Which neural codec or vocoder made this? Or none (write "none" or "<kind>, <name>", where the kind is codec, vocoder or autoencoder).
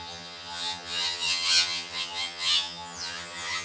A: vocoder, HiFi-GAN